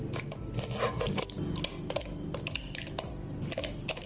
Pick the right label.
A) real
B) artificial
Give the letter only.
A